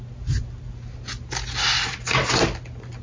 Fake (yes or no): no